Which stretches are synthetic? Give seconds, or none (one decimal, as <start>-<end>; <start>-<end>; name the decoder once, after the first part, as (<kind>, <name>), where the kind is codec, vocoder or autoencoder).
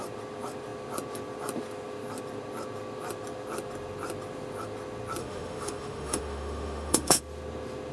5.2-7.2 (autoencoder, DAC-VAE)